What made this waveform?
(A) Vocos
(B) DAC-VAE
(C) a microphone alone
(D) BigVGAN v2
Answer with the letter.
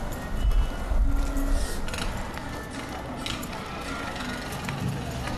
C